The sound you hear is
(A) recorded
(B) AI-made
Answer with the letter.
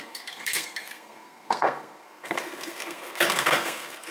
B